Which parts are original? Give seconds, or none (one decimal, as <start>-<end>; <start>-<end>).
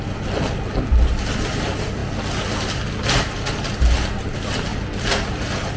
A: 0.0-5.8